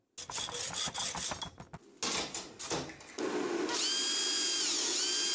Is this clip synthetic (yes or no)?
no